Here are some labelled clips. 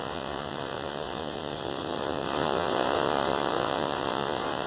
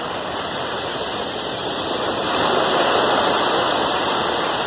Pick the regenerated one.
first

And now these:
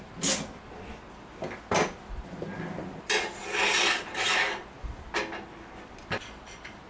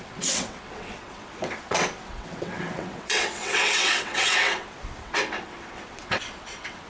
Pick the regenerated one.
second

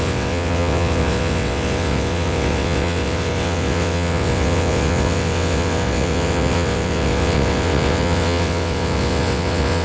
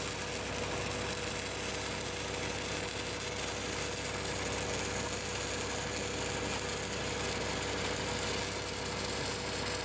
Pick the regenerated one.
first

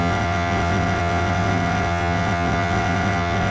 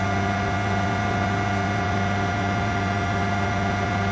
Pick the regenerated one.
first